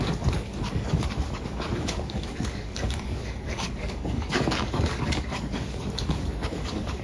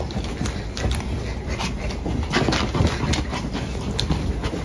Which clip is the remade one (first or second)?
first